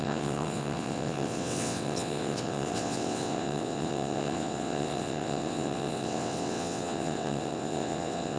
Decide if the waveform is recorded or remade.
remade